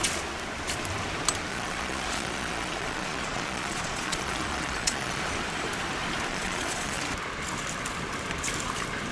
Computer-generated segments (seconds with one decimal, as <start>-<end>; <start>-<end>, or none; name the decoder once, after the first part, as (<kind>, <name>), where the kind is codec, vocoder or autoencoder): 1.5-5.2 (vocoder, Vocos); 6.3-7.0